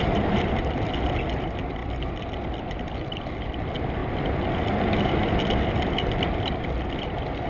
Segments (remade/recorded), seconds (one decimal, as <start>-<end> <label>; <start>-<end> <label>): 0.0-7.5 recorded